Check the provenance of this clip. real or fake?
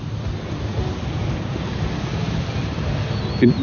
real